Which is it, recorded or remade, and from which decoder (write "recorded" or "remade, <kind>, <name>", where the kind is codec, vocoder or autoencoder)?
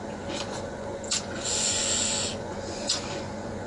remade, vocoder, Vocos